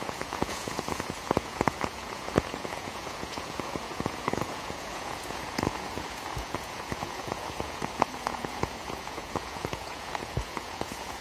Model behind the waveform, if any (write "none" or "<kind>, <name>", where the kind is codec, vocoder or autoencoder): vocoder, Vocos